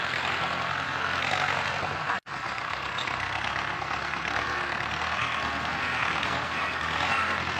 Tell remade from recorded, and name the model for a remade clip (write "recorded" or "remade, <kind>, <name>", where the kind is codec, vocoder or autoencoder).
remade, codec, SNAC